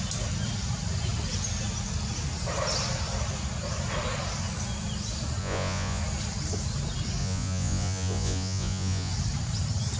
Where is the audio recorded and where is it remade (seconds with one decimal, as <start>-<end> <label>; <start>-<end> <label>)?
0.0-5.4 recorded; 5.4-6.0 remade; 6.0-7.2 recorded; 7.2-9.1 remade; 9.1-10.0 recorded